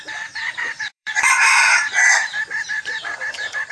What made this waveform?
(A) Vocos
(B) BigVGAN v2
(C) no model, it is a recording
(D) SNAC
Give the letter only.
B